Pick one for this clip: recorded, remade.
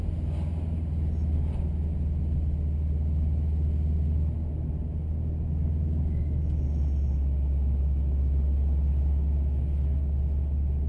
recorded